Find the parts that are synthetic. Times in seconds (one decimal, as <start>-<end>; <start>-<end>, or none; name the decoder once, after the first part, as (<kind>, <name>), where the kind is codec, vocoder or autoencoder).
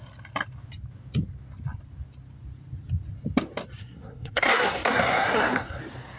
3.8-5.8 (codec, SNAC)